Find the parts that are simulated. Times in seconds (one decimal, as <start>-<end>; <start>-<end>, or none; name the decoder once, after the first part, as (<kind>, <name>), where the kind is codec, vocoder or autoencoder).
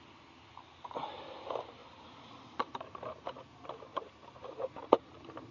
1.8-3.3 (vocoder, BigVGAN v2); 3.9-5.0